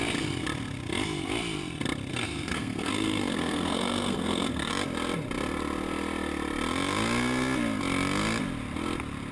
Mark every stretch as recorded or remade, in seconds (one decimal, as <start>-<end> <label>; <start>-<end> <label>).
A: 0.0-2.1 recorded; 2.1-4.7 remade; 4.7-9.3 recorded